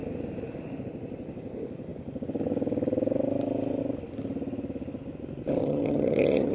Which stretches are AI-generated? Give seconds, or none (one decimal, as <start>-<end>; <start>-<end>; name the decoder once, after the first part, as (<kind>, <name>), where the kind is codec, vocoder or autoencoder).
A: 5.6-6.5 (vocoder, HiFi-GAN)